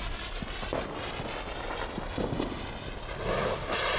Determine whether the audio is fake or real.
real